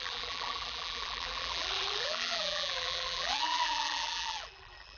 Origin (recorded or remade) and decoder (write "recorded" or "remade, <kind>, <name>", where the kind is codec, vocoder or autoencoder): remade, vocoder, BigVGAN v2